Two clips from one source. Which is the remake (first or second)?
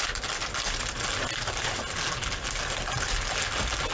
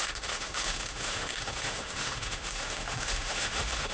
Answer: second